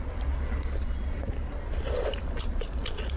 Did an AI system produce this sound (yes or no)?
no